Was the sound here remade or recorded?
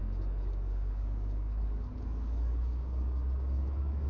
remade